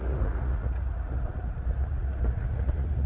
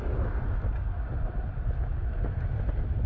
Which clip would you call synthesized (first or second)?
first